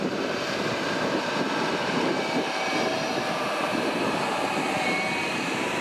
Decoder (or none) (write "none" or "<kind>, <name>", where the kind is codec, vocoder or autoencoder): vocoder, BigVGAN v2